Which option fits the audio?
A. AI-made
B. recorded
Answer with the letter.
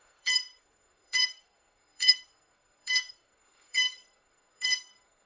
A